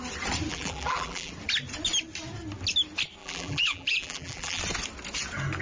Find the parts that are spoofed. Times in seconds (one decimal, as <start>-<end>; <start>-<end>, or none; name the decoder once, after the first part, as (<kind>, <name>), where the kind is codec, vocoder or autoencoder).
0.5-1.3 (vocoder, BigVGAN v2); 3.2-4.6